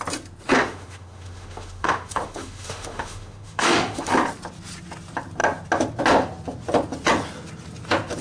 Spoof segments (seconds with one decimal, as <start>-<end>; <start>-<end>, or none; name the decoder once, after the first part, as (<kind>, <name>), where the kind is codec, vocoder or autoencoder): 0.6-4.1 (autoencoder, DAC-VAE)